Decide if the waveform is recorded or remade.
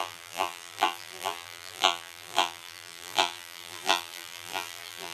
remade